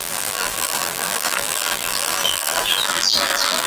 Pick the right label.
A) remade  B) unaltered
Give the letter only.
A